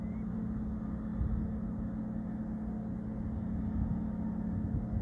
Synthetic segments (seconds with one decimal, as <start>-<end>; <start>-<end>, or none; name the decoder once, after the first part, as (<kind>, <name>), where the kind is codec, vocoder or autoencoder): none